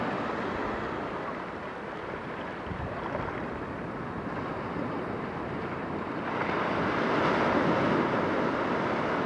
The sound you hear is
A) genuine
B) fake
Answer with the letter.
A